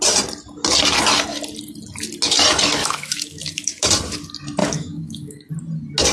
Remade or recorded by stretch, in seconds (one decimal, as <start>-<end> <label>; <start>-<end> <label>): 0.0-2.8 recorded; 2.8-3.9 remade; 3.9-4.6 recorded; 4.6-5.5 remade; 5.5-6.1 recorded